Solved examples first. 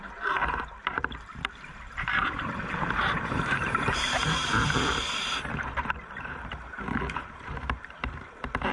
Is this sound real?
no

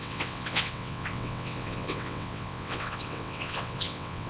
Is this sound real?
no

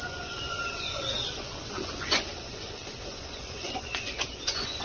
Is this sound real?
no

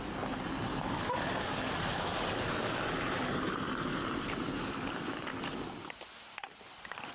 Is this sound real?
yes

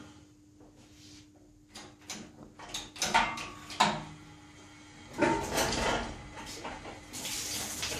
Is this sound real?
yes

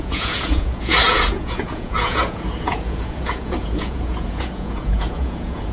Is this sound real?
no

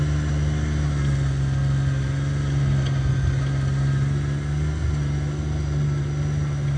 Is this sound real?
yes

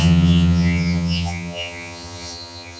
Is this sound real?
no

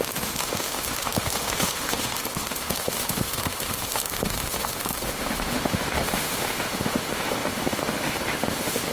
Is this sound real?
no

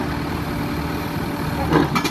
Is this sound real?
yes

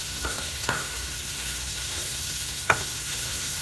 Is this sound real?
no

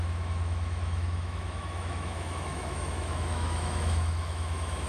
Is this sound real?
no